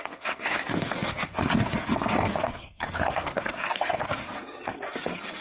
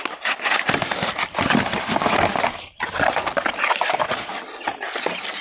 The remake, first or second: first